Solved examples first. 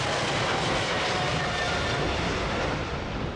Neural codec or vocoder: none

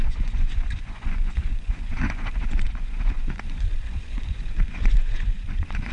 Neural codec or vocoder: vocoder, Vocos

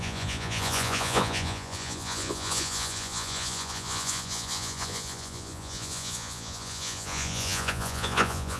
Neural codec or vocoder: vocoder, Vocos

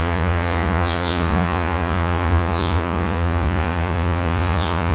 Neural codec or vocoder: vocoder, Vocos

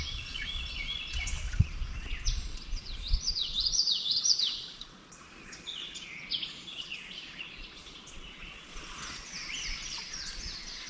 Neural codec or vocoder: vocoder, Vocos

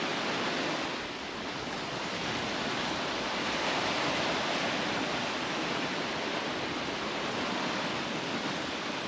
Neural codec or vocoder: none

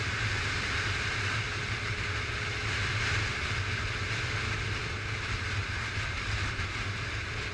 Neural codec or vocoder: none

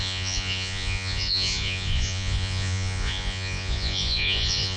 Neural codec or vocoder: vocoder, Vocos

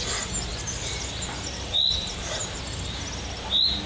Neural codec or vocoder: none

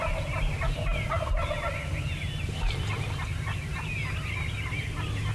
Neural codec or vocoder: none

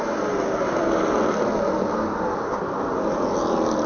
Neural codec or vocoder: none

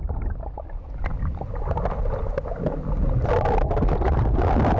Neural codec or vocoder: none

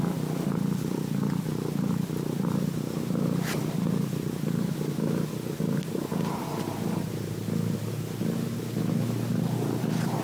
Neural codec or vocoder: none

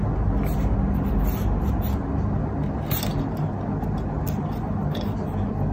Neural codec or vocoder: none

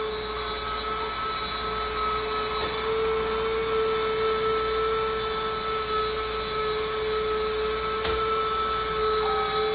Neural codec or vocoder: none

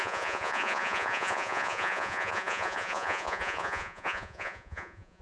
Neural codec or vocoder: vocoder, Vocos